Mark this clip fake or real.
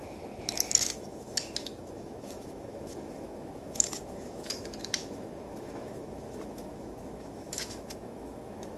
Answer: fake